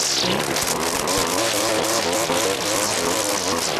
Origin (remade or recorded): recorded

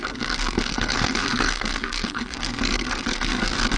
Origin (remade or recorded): remade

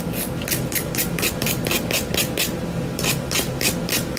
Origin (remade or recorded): recorded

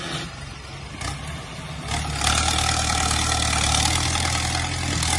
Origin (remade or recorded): recorded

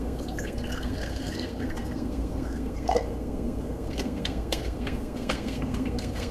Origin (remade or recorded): remade